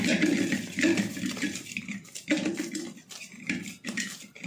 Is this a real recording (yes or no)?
yes